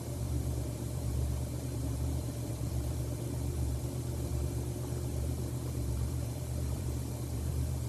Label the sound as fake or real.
fake